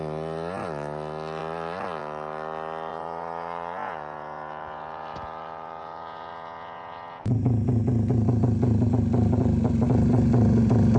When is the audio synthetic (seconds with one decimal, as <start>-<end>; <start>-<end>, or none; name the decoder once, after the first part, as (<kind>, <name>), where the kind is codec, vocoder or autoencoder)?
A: 2.9-7.8 (vocoder, Vocos)